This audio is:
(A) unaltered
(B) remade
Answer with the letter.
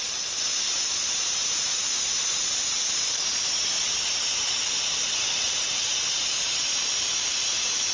A